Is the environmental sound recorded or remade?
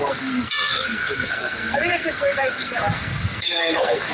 remade